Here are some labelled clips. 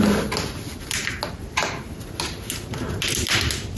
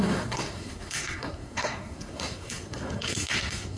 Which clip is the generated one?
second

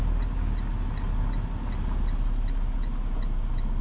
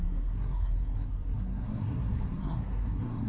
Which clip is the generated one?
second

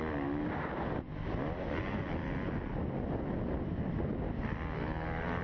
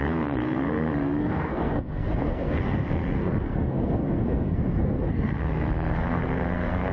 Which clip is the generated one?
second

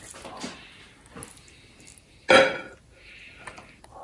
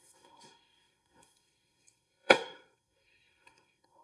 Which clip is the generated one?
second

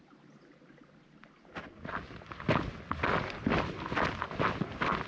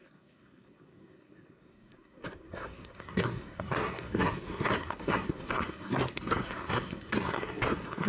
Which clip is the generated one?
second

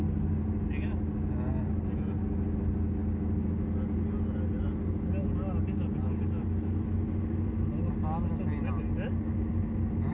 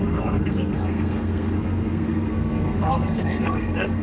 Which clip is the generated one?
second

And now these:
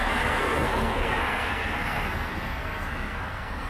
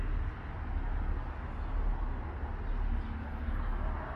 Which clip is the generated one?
first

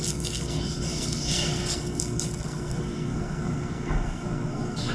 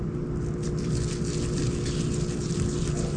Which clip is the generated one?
first